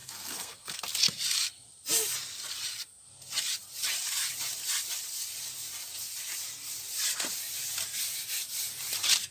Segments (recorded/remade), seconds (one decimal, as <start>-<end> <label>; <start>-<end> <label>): 0.0-0.8 remade; 0.8-9.3 recorded